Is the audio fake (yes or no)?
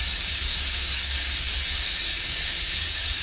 yes